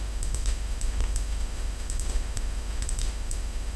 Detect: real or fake fake